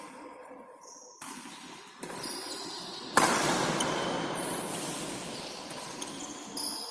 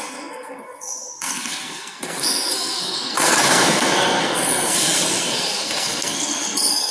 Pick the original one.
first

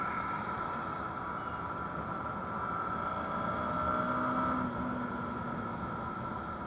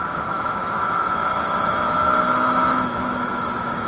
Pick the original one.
first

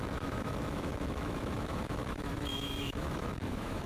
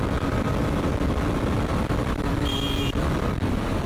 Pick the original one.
second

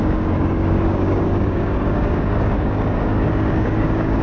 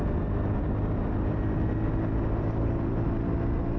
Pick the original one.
second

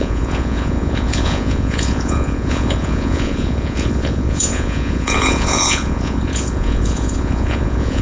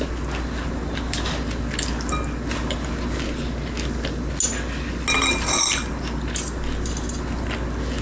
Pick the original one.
second